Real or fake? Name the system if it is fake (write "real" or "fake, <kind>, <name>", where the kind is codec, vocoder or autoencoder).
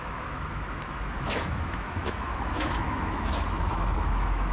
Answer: fake, autoencoder, DAC-VAE